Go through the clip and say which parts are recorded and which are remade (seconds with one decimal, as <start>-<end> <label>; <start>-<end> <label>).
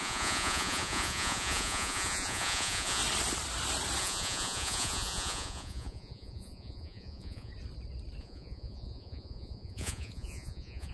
0.0-3.0 remade; 3.0-4.0 recorded; 4.0-7.5 remade; 7.5-8.2 recorded; 8.2-10.9 remade